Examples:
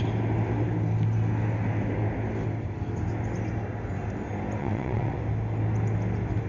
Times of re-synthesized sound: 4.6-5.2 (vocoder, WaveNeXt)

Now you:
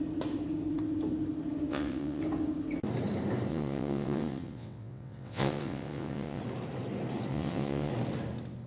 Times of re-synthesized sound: 1.7-2.2 (vocoder, WaveNeXt); 3.5-6.4; 7.3-7.9

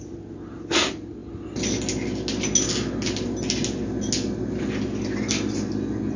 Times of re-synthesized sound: none

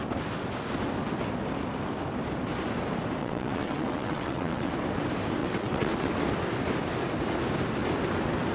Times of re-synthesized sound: 3.2-4.7 (vocoder, WaveNeXt); 5.4-6.1

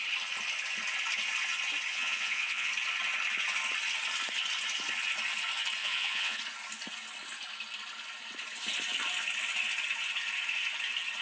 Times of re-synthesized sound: 1.9-2.7 (vocoder, WaveNeXt); 5.8-6.4

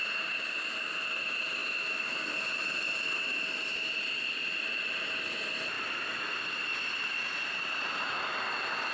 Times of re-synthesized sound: none

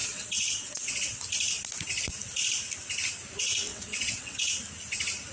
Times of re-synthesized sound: 0.0-1.2 (vocoder, WaveNeXt); 3.7-4.5